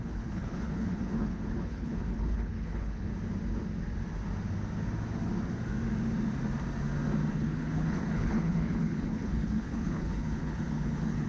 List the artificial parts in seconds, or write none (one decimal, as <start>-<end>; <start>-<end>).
0.0-3.1; 7.3-11.3